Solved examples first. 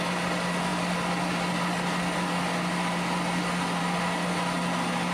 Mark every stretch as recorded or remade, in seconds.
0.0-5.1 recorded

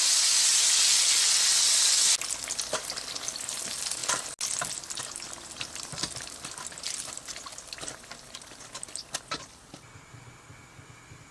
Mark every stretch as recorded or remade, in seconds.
0.0-11.3 recorded

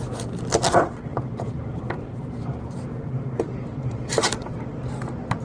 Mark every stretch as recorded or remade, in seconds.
0.0-1.1 recorded; 1.1-4.3 remade; 4.3-5.4 recorded

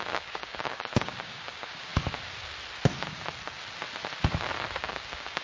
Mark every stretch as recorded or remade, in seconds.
0.0-1.9 remade; 1.9-4.8 recorded; 4.8-5.4 remade

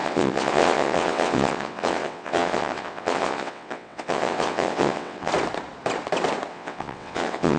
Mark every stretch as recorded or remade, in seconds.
0.0-5.3 remade; 5.3-6.5 recorded; 6.5-7.6 remade

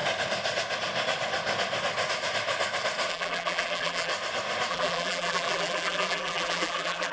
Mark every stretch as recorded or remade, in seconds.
0.0-3.1 recorded; 3.1-4.1 remade; 4.1-4.7 recorded; 4.7-7.1 remade

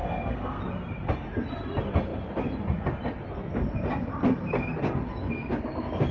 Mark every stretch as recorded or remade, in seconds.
0.0-0.6 remade; 0.6-6.1 recorded